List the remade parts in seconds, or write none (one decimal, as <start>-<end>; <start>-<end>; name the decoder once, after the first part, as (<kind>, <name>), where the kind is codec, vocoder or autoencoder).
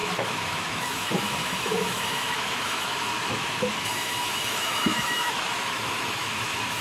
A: 0.0-6.8 (autoencoder, DAC-VAE)